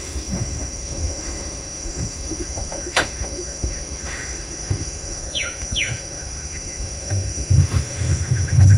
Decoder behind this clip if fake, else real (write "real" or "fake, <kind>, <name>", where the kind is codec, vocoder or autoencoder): fake, autoencoder, DAC-VAE